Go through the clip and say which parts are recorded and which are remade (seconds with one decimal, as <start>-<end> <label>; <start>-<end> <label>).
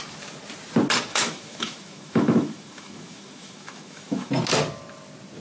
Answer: 0.0-1.1 recorded; 1.1-4.3 remade; 4.3-5.4 recorded